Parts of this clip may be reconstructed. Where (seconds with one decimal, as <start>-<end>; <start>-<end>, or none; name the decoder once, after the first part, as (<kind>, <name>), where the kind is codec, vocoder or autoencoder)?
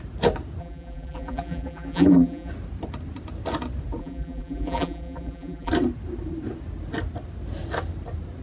0.6-2.5 (vocoder, BigVGAN v2); 4.0-5.7